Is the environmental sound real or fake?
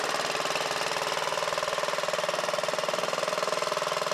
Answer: real